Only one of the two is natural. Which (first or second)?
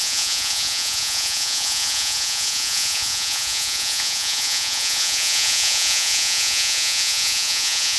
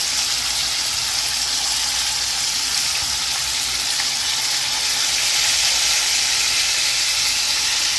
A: second